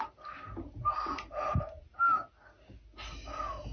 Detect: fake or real real